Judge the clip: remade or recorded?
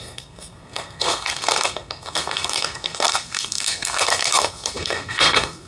remade